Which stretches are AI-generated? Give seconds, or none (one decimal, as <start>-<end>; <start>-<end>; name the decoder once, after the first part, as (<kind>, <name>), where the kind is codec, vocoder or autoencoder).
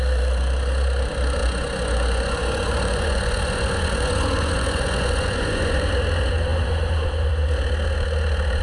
1.4-5.9 (vocoder, Vocos)